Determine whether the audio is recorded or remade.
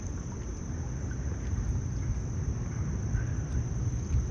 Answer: recorded